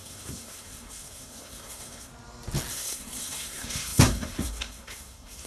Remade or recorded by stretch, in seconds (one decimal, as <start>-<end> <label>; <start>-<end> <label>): 0.0-2.1 remade; 2.1-2.7 recorded; 2.7-5.5 remade